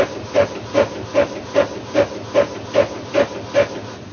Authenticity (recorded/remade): recorded